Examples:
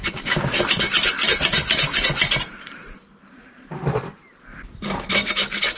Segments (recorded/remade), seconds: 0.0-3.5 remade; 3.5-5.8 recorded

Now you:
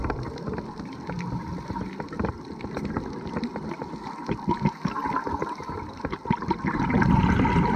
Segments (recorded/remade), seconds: 0.0-7.8 recorded

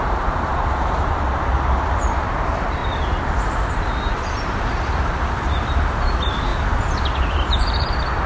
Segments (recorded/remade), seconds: 0.0-0.5 remade; 0.5-2.0 recorded; 2.0-2.8 remade; 2.8-4.3 recorded; 4.3-6.5 remade; 6.5-7.2 recorded; 7.2-8.3 remade

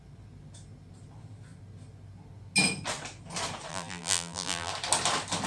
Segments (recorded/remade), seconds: 0.0-3.7 recorded; 3.7-4.7 remade; 4.7-5.5 recorded

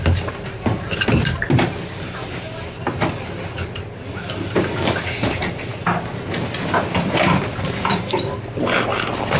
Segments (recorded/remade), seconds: 0.0-5.7 remade; 5.7-6.8 recorded; 6.8-9.4 remade

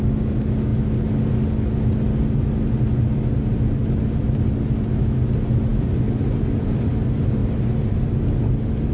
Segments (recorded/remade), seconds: 0.0-5.7 recorded; 5.7-6.9 remade; 6.9-8.9 recorded